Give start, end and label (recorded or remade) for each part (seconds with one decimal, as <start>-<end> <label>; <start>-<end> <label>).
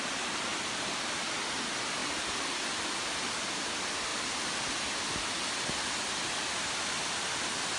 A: 0.0-2.0 recorded; 2.0-3.0 remade; 3.0-7.8 recorded